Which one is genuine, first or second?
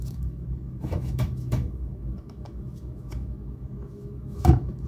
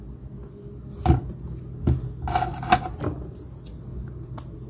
second